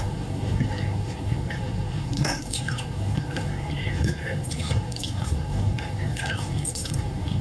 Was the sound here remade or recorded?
remade